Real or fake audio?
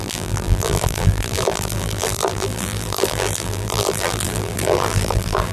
fake